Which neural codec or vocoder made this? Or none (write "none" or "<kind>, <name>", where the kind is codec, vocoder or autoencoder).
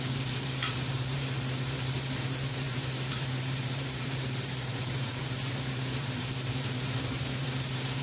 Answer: vocoder, BigVGAN v2